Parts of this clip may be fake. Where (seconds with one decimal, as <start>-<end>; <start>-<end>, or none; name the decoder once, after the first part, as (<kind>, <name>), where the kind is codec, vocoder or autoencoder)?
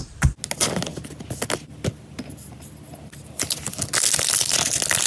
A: none